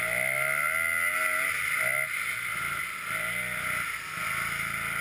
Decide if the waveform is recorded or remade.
recorded